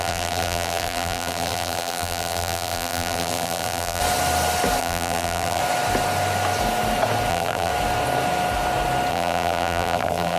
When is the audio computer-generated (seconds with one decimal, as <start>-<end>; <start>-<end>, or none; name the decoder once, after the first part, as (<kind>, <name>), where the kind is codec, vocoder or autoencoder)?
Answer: 0.0-4.0 (vocoder, BigVGAN v2); 4.8-5.6; 7.3-7.7; 9.1-10.4

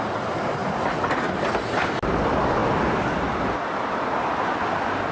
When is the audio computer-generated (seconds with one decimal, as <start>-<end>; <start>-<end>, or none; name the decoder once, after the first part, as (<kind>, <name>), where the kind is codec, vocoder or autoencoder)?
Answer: none

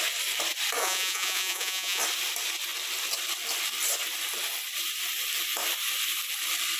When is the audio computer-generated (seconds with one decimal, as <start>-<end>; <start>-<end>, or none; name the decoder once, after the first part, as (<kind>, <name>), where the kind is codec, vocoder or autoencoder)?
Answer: 0.8-2.0 (vocoder, Vocos)

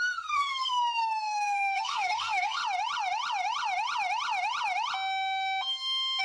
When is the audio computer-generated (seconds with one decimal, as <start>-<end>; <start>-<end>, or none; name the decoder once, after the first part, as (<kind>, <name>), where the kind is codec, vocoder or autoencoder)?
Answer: 0.0-2.6 (codec, SNAC)

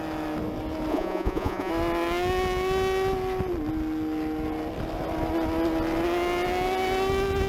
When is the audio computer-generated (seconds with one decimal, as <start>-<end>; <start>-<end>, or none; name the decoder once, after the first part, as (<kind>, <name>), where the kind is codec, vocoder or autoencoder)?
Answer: 0.9-1.7 (vocoder, Vocos)